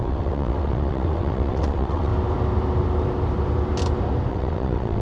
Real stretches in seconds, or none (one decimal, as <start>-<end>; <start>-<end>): 2.1-4.3